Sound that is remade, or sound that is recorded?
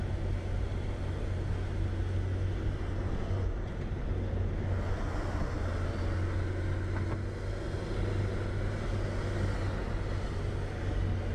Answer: recorded